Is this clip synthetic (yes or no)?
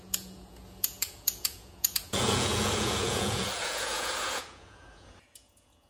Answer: yes